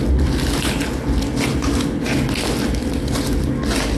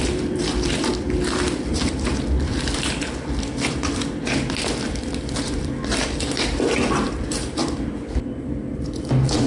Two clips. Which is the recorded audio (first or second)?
first